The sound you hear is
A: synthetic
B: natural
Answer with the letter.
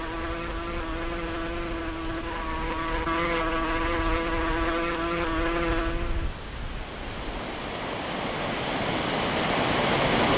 B